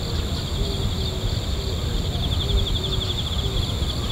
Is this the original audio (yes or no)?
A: yes